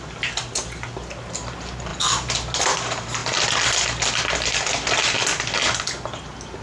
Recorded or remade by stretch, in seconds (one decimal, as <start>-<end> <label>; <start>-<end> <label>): 0.0-6.6 recorded